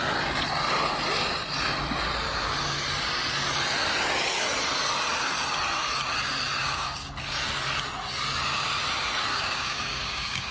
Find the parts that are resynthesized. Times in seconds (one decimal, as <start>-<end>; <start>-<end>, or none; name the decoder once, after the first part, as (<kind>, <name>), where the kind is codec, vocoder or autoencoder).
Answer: 6.6-7.1 (codec, DAC); 9.3-10.5